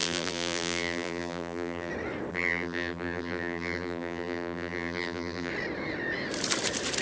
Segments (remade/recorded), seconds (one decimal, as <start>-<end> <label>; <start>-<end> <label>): 0.0-1.9 remade; 1.9-2.3 recorded; 2.3-5.5 remade; 5.5-7.0 recorded